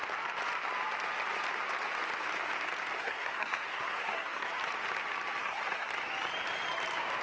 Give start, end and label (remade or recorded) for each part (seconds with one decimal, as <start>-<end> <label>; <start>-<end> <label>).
0.0-3.0 recorded; 3.0-4.5 remade; 4.5-5.4 recorded; 5.4-5.9 remade; 5.9-7.2 recorded